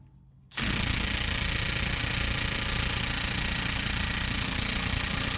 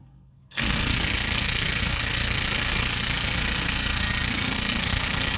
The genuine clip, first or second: first